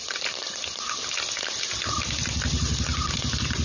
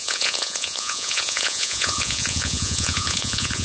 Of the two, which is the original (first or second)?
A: first